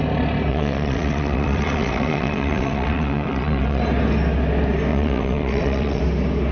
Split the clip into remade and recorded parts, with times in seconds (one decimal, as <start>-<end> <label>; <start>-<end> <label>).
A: 0.0-0.5 recorded; 0.5-3.8 remade; 3.8-4.9 recorded; 4.9-6.0 remade; 6.0-6.5 recorded